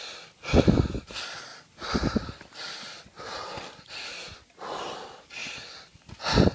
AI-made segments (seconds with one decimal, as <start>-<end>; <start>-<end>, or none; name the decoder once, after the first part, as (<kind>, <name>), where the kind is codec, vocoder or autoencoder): none